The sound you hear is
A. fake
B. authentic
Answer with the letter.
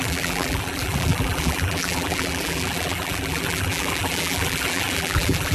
A